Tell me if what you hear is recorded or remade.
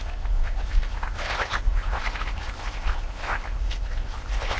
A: remade